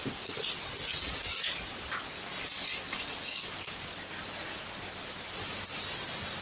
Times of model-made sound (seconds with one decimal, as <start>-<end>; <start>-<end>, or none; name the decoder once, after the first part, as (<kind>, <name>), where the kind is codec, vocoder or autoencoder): none